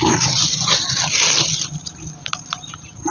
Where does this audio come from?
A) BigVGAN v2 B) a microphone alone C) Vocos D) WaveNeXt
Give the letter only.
A